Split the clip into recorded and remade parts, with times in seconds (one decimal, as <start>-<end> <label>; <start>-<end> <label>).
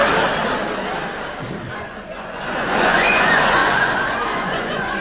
0.0-1.7 recorded; 1.7-5.0 remade